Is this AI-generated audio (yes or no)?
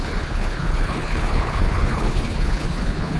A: yes